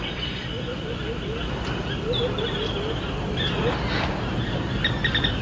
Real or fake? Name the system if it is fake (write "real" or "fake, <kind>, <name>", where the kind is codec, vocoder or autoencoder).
real